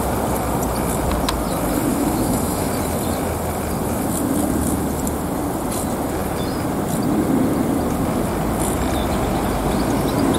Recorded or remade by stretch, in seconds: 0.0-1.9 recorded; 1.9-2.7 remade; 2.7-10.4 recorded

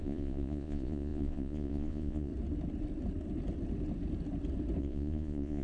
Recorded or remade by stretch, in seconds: 0.0-2.3 remade; 2.3-4.8 recorded; 4.8-5.6 remade